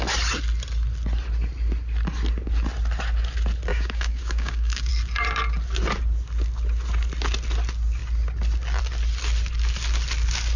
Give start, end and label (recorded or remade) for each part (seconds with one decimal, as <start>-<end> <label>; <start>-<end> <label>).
0.0-3.7 recorded; 3.7-4.9 remade; 4.9-10.6 recorded